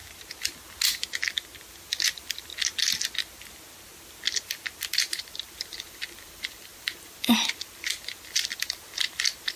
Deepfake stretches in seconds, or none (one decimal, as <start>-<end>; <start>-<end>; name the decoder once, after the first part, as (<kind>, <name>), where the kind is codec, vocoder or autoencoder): 1.8-2.5 (vocoder, BigVGAN v2); 5.0-9.6